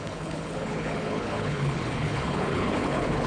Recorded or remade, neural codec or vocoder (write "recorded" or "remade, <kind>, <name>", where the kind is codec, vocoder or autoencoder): remade, codec, HILCodec